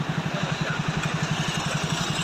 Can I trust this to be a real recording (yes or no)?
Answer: yes